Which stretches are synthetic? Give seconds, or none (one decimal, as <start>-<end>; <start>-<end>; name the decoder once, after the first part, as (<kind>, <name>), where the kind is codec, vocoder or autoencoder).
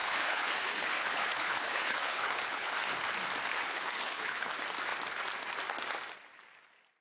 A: 0.0-2.7 (codec, HILCodec); 3.5-4.5